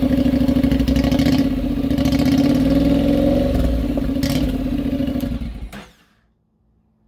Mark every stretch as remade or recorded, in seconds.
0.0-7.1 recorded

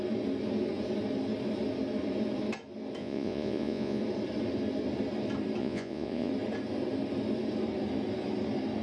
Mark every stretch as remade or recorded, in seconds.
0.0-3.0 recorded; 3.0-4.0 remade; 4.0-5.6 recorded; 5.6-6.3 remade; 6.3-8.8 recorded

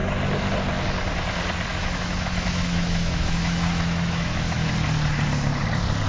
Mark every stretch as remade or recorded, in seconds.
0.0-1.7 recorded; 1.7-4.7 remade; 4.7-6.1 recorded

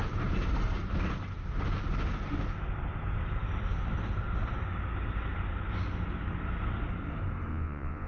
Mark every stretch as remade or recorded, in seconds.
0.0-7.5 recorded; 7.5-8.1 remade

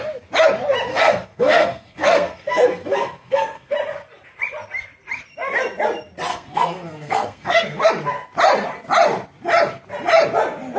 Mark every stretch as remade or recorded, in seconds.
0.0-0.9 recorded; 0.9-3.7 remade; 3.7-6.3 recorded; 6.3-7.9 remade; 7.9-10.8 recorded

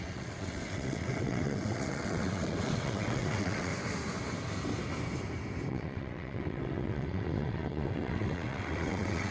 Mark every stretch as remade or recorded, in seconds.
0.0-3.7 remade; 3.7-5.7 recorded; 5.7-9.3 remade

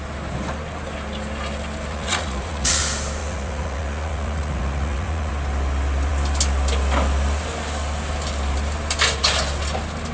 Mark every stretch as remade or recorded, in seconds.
0.0-1.9 recorded; 1.9-2.8 remade; 2.8-3.2 recorded; 3.2-5.3 remade; 5.3-10.1 recorded

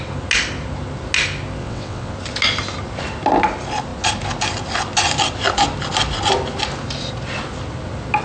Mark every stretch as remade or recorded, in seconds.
0.0-1.6 recorded; 1.6-2.1 remade; 2.1-8.2 recorded